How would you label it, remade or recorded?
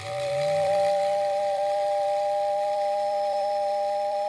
remade